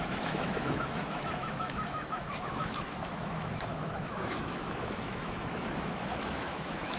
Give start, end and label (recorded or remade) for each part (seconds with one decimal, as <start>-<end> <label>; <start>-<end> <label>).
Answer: 0.0-7.0 remade